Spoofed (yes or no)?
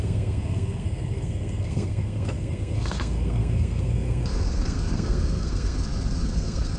yes